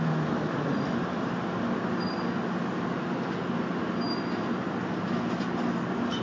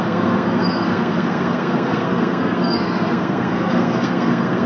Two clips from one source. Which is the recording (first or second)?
first